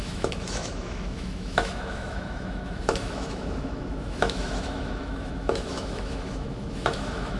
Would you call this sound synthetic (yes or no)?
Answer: yes